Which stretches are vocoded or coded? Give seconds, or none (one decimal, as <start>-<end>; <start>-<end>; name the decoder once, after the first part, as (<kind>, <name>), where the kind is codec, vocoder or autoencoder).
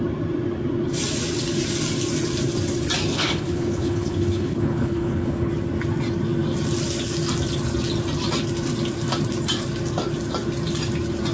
3.1-5.5 (codec, HILCodec)